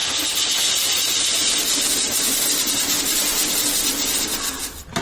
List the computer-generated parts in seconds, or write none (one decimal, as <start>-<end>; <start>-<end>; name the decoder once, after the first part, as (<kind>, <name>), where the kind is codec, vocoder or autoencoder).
none

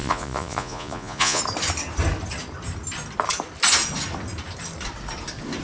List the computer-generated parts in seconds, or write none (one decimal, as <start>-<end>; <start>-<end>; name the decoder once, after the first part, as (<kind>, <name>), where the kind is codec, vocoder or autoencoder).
0.0-1.4 (vocoder, Vocos)